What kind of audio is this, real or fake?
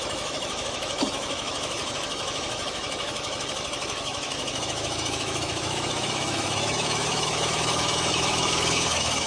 fake